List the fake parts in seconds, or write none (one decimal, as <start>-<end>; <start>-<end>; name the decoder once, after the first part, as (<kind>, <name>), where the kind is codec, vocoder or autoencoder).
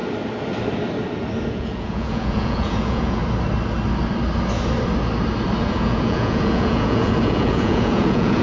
1.5-3.2 (vocoder, Vocos); 5.6-8.4